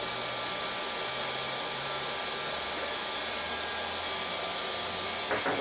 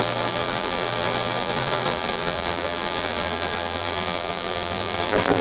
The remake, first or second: second